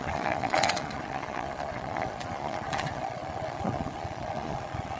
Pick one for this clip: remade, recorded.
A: remade